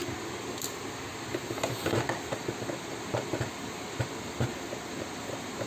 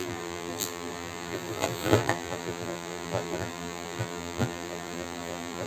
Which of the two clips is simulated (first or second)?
second